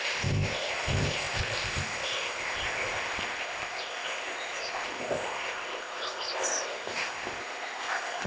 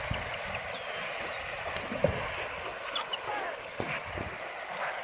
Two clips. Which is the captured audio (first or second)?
second